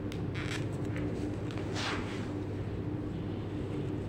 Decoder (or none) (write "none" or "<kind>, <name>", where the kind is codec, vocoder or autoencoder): none